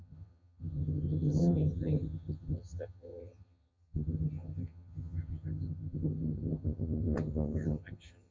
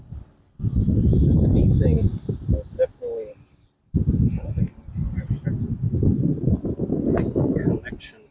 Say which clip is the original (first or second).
second